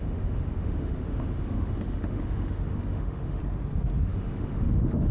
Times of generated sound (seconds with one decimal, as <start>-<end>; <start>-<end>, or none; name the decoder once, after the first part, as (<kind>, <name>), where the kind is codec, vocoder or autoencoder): 0.0-3.4 (autoencoder, DAC-VAE); 4.1-5.1